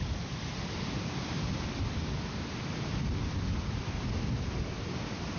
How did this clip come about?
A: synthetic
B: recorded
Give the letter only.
B